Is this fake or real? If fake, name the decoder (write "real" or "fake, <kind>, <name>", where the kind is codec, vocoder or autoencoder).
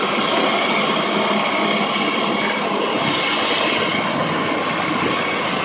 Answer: real